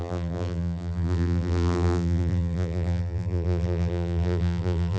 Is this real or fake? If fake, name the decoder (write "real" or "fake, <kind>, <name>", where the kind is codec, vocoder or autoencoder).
fake, vocoder, BigVGAN v2